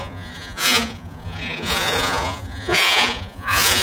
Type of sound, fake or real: fake